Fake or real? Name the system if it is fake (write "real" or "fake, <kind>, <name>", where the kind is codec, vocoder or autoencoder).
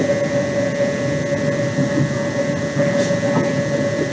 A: real